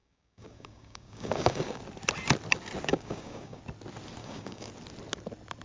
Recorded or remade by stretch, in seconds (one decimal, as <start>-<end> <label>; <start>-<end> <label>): 0.0-1.8 remade; 1.8-2.9 recorded; 2.9-3.6 remade; 3.6-4.2 recorded; 4.2-4.7 remade; 4.7-5.6 recorded